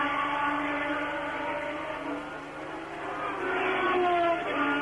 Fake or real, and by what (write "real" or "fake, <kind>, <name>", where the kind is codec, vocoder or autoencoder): real